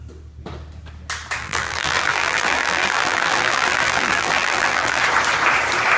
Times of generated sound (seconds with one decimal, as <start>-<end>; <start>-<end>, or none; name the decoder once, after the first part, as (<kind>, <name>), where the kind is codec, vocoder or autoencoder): 1.4-5.0 (vocoder, BigVGAN v2)